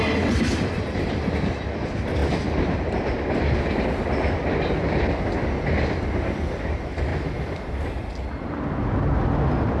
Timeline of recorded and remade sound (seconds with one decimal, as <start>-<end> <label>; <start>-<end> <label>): 0.0-7.1 recorded; 7.1-8.0 remade; 8.0-9.8 recorded